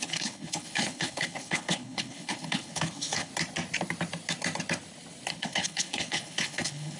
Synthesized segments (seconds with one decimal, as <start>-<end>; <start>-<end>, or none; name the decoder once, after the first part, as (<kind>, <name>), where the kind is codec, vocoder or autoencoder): 0.0-3.3 (codec, HILCodec); 5.3-7.0